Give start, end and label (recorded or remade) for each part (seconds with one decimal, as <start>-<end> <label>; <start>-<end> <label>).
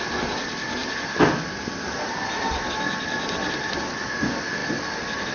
0.0-5.3 recorded